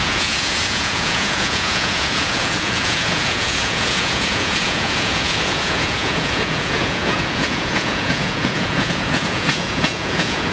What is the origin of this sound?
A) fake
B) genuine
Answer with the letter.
A